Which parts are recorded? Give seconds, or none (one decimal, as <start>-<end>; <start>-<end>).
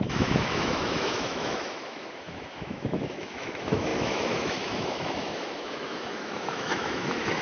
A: none